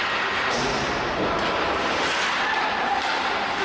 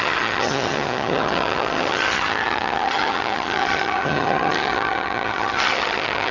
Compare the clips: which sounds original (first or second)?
first